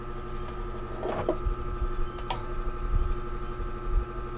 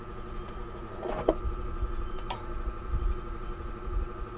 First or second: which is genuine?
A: first